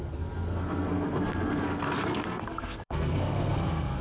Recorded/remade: remade